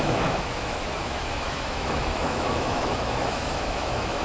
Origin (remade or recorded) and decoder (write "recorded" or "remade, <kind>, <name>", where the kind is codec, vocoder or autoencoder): remade, autoencoder, DAC-VAE